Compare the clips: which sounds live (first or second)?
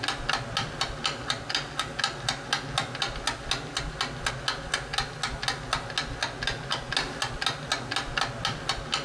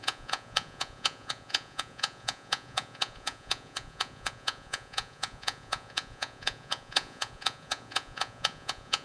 first